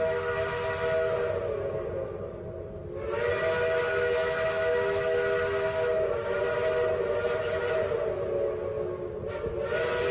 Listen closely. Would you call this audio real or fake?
real